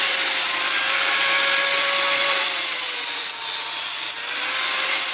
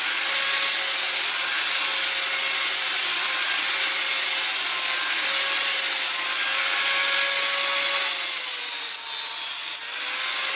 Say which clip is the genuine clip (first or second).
second